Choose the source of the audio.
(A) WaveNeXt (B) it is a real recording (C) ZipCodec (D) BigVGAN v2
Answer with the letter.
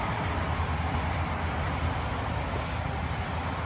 B